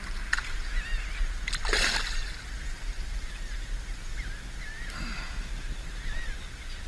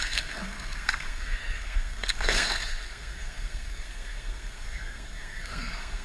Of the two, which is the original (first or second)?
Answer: first